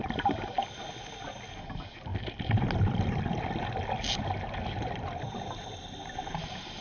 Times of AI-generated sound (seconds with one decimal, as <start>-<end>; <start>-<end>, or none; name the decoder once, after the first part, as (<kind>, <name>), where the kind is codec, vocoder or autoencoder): none